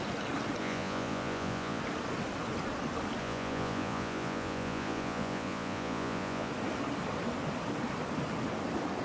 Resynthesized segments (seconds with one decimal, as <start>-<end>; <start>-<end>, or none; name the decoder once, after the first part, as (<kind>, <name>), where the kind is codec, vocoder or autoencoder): 0.6-1.8 (vocoder, Vocos); 3.2-6.5